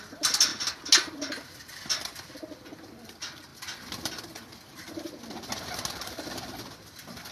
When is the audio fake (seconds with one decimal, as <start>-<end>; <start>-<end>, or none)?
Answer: 0.0-0.5; 1.1-3.5; 4.7-7.3